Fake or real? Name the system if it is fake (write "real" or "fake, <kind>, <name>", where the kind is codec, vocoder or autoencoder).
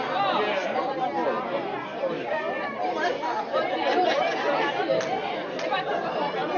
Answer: real